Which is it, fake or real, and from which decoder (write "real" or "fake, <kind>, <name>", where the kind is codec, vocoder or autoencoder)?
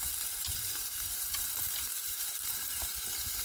fake, vocoder, BigVGAN v2